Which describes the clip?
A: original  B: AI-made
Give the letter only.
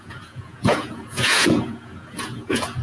B